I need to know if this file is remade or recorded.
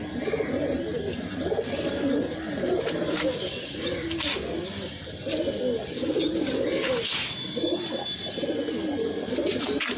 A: recorded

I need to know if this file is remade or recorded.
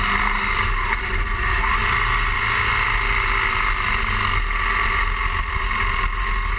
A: recorded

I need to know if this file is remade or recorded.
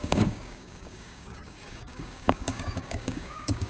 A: remade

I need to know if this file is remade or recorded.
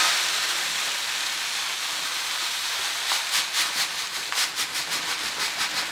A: recorded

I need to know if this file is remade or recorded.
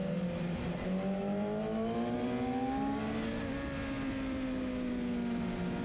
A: recorded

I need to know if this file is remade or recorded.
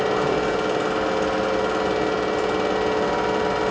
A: recorded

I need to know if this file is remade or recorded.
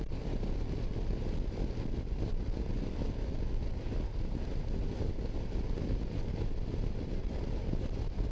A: recorded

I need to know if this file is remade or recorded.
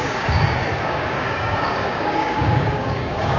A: remade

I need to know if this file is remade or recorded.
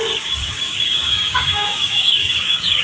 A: remade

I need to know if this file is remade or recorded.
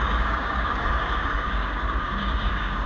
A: remade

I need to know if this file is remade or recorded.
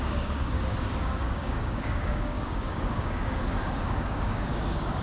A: remade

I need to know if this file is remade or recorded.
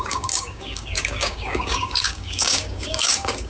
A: remade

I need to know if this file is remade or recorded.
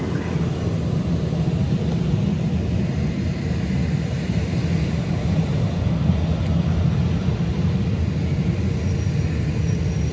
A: recorded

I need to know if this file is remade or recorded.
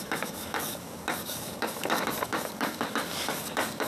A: remade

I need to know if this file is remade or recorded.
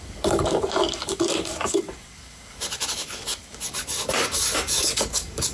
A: remade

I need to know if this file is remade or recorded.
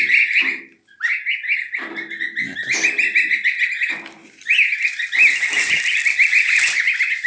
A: recorded